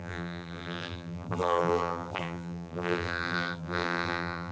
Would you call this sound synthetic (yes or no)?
yes